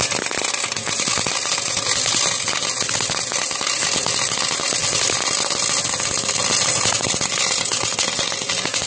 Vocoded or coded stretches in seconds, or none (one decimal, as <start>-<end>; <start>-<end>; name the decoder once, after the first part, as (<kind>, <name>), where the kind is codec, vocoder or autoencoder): none